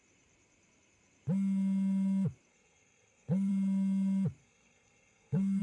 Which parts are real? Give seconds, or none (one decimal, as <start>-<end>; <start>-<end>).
0.0-2.5; 3.5-4.4